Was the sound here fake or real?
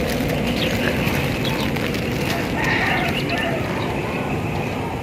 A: real